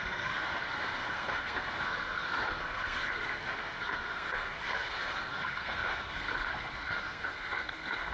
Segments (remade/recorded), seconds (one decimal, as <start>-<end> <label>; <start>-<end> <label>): 0.0-8.1 remade